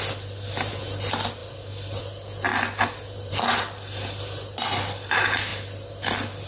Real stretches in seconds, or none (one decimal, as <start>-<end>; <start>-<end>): 0.0-6.5